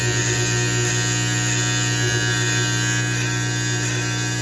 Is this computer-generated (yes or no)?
no